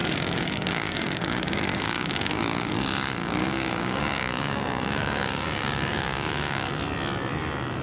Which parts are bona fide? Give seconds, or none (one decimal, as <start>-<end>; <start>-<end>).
2.7-3.2; 6.7-7.8